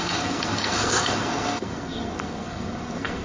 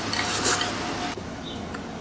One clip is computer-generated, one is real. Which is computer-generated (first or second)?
first